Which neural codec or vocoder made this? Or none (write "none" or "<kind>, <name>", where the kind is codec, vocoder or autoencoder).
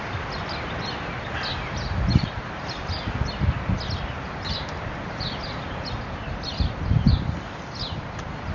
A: none